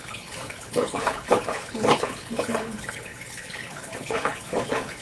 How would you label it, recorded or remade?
remade